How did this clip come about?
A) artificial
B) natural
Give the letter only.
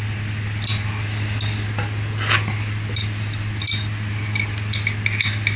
B